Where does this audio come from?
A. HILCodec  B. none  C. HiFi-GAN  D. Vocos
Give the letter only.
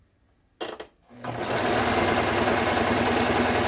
B